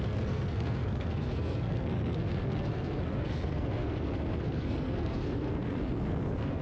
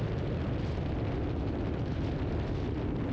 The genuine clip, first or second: second